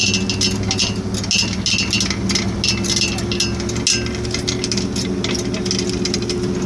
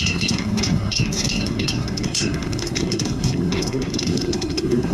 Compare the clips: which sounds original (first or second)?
first